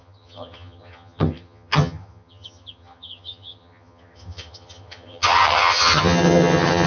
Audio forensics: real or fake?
fake